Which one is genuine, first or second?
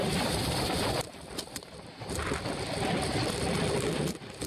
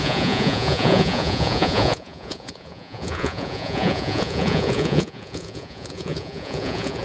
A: first